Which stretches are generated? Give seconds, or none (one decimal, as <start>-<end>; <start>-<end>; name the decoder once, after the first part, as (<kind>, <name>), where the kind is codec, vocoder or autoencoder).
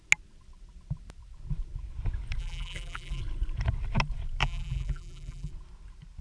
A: 2.4-3.2 (vocoder, BigVGAN v2); 4.4-5.5